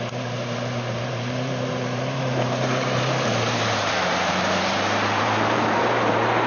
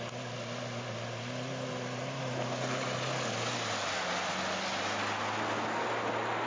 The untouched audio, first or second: second